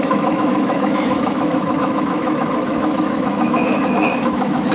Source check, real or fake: fake